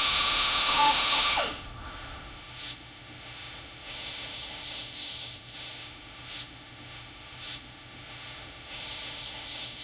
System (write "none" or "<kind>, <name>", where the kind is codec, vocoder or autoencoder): autoencoder, DAC-VAE